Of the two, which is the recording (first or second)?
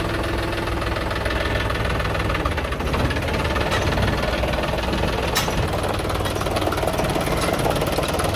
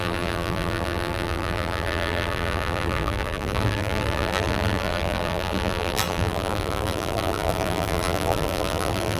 first